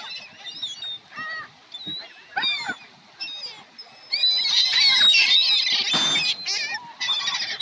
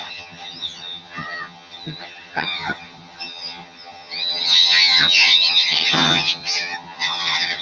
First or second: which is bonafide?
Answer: first